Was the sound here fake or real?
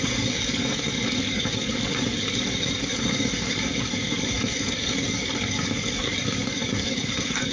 fake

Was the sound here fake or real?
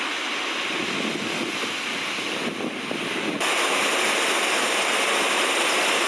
real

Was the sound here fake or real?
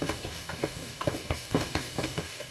fake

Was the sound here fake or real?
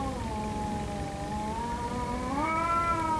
real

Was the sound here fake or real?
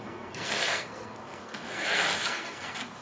fake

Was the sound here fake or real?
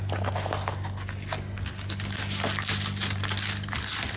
real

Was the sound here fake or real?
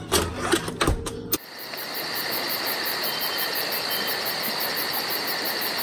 real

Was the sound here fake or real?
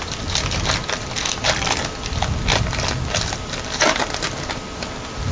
real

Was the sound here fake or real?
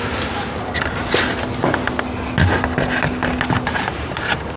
real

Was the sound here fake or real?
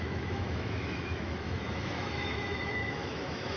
fake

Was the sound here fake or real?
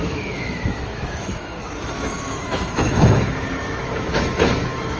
fake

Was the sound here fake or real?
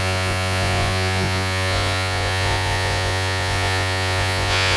fake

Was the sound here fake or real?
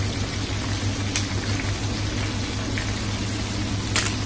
real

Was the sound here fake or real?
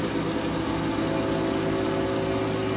real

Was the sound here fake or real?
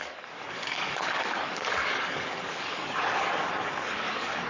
fake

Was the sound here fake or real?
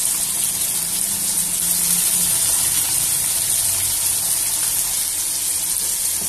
real